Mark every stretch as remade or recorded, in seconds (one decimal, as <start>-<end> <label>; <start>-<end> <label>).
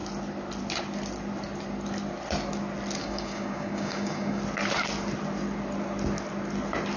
0.0-3.0 recorded; 3.0-4.4 remade; 4.4-7.0 recorded